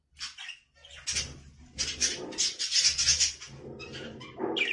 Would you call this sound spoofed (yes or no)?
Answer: no